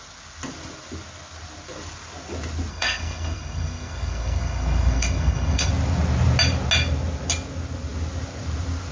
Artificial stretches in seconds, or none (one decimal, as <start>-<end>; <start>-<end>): 2.7-5.7